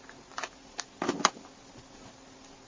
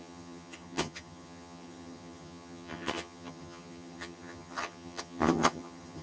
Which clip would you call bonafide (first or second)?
first